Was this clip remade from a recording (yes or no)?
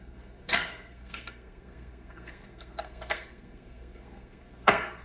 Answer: yes